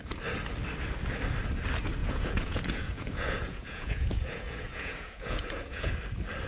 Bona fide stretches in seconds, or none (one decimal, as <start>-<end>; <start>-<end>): 0.0-2.0; 5.9-6.5